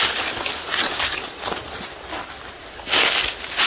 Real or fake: real